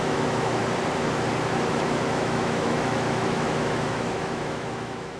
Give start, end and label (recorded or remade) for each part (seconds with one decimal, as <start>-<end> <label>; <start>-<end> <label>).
0.0-0.6 remade; 0.6-1.7 recorded; 1.7-5.2 remade